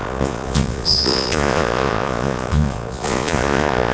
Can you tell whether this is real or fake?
fake